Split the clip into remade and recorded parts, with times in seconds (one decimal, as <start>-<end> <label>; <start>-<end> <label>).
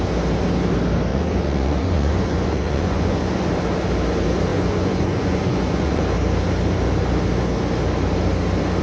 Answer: 0.0-1.1 recorded; 1.1-3.5 remade; 3.5-4.5 recorded; 4.5-6.0 remade; 6.0-8.8 recorded